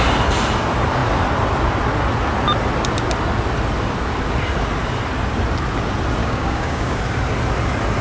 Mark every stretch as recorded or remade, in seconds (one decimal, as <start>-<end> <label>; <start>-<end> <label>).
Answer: 0.0-6.2 recorded; 6.2-7.0 remade; 7.0-8.0 recorded